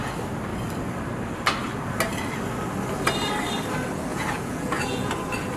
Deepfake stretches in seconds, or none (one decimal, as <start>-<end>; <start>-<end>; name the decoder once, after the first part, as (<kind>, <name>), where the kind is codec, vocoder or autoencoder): 4.1-5.1 (vocoder, Vocos)